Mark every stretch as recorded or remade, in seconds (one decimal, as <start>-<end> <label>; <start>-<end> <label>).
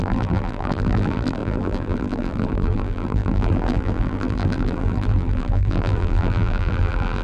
0.0-7.2 remade